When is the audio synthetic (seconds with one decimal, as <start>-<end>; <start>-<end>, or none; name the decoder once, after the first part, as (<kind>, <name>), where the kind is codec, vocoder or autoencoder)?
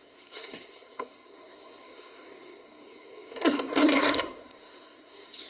0.0-5.5 (codec, SNAC)